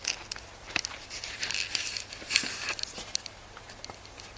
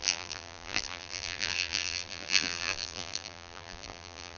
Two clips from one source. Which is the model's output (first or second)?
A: second